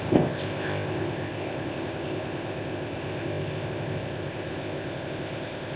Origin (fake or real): fake